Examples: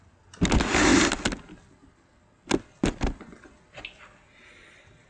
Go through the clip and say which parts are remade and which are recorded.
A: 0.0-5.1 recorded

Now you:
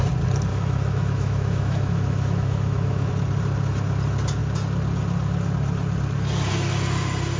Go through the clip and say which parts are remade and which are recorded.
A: 0.0-0.5 recorded; 0.5-3.1 remade; 3.1-7.4 recorded

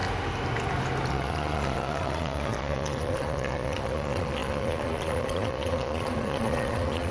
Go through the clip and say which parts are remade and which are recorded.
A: 0.0-1.1 recorded; 1.1-7.1 remade

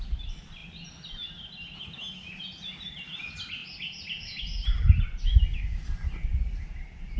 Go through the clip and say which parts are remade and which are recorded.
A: 0.0-7.2 recorded

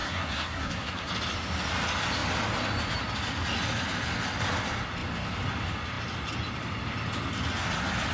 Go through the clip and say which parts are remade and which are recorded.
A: 0.0-1.1 remade; 1.1-8.1 recorded